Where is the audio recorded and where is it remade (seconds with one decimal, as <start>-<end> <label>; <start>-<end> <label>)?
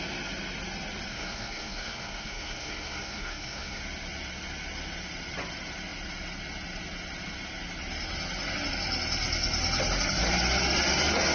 0.0-1.1 recorded; 1.1-3.8 remade; 3.8-11.3 recorded